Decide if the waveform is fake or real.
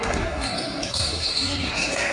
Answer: fake